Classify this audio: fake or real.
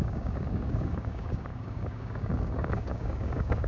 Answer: fake